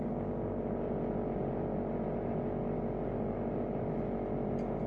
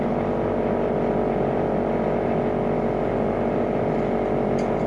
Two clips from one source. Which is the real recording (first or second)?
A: first